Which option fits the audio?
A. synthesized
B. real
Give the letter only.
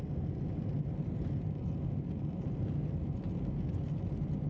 B